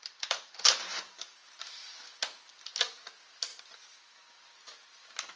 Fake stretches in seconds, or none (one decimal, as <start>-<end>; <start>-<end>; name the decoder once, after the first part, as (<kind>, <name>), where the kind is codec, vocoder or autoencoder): none